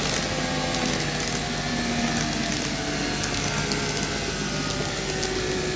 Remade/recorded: recorded